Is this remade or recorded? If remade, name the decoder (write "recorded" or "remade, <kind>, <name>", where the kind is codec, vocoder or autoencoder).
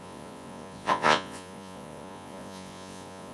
remade, vocoder, Vocos